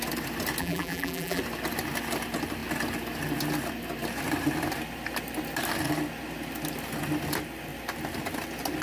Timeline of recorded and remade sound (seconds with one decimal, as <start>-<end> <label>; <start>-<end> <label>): 0.0-0.6 recorded; 0.6-1.4 remade; 1.4-8.8 recorded